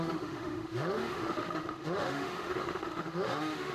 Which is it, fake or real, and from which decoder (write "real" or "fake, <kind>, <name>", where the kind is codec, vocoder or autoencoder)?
fake, autoencoder, DAC-VAE